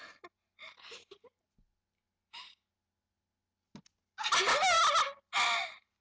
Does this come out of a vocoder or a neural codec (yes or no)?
no